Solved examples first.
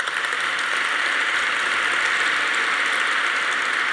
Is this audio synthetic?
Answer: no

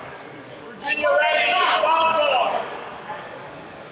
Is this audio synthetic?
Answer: yes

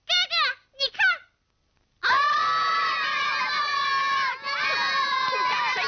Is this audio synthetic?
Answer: no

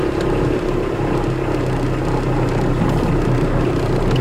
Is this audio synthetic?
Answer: no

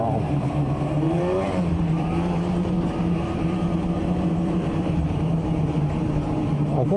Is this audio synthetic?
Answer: yes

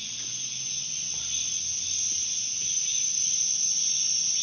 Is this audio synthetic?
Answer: no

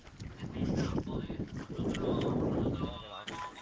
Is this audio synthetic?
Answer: no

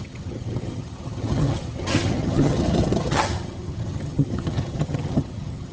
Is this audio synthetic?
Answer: yes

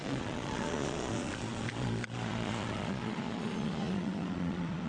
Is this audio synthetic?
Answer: yes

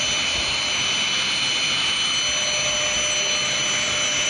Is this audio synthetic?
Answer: no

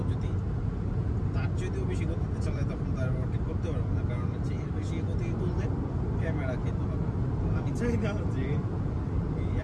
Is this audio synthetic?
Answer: no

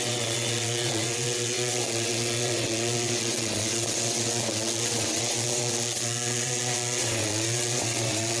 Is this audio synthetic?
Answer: yes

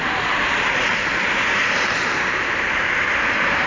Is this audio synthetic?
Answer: yes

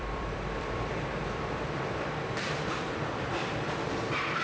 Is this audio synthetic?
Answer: yes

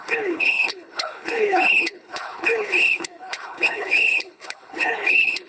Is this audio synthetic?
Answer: yes